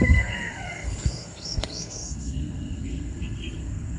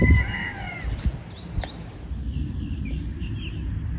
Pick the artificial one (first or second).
first